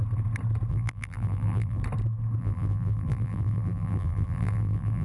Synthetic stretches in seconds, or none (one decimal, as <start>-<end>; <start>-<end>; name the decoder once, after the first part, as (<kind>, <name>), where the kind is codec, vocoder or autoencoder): 0.7-1.8 (vocoder, BigVGAN v2); 2.4-5.0